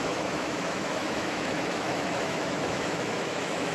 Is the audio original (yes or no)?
no